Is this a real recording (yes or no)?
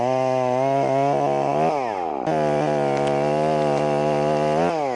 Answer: yes